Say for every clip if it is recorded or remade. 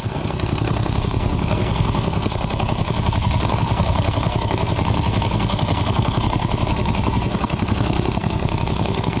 remade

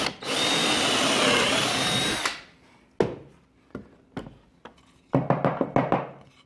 recorded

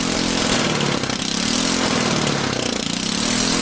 recorded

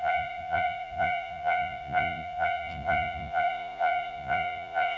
remade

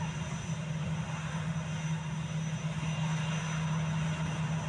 recorded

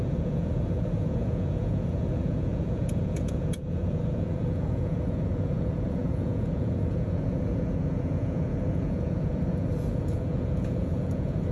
remade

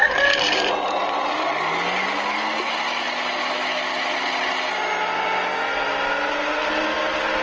recorded